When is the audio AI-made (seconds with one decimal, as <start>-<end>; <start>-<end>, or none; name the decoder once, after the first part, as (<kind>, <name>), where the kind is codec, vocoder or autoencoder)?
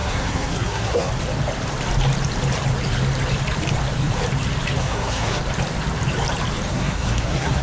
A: 0.0-1.1 (codec, SNAC); 4.8-5.4; 6.7-7.6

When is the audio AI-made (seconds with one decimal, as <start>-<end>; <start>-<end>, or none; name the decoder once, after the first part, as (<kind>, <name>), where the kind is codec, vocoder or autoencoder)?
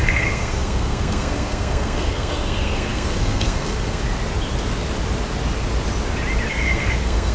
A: 0.0-4.0 (codec, SNAC); 6.5-7.3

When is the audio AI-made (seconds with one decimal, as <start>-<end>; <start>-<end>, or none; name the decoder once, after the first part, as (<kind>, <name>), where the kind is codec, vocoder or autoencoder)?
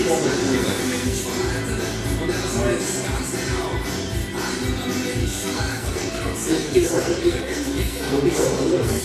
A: 0.4-1.2 (codec, SNAC); 5.2-9.0